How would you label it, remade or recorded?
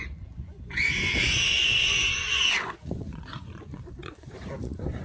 remade